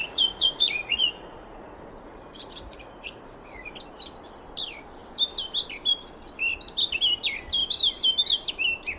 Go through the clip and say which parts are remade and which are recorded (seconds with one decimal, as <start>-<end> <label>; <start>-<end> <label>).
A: 0.0-3.7 remade; 3.7-9.0 recorded